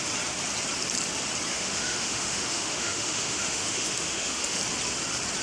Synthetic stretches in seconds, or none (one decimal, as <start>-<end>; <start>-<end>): 1.5-4.6